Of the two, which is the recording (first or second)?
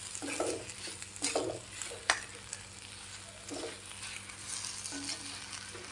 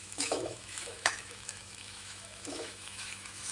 first